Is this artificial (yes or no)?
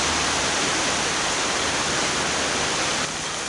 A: no